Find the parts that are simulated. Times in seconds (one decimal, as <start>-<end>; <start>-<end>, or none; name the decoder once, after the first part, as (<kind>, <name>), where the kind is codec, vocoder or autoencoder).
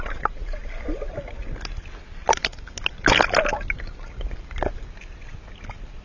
none